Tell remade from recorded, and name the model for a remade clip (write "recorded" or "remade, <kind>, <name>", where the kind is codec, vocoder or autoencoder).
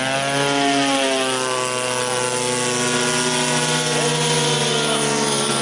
recorded